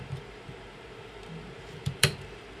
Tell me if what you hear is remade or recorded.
remade